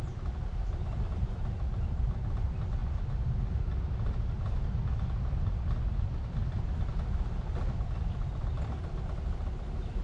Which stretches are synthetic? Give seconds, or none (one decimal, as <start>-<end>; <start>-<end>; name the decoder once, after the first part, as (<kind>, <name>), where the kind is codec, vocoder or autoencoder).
0.0-2.8 (vocoder, BigVGAN v2); 6.5-10.0